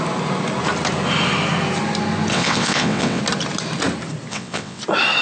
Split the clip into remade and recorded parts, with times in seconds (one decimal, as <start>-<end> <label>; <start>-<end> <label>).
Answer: 0.0-2.3 recorded; 2.3-3.2 remade; 3.2-4.3 recorded; 4.3-4.8 remade; 4.8-5.2 recorded